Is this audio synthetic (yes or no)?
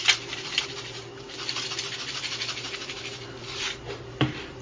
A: no